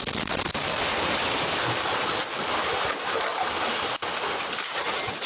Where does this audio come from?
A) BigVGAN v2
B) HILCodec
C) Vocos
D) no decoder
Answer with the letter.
D